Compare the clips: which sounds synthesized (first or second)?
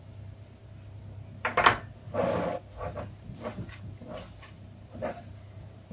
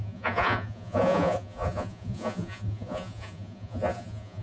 second